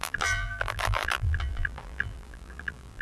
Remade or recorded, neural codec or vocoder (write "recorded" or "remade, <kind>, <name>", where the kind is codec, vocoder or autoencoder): remade, vocoder, BigVGAN v2